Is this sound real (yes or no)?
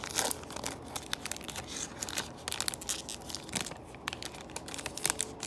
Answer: yes